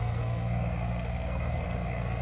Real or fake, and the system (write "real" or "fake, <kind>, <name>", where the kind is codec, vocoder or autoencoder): fake, codec, SNAC